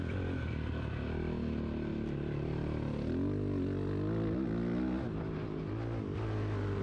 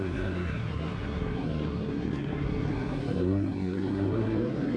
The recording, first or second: first